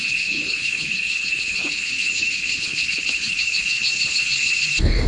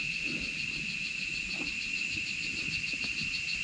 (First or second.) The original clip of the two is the second